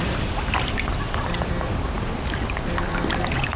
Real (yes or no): yes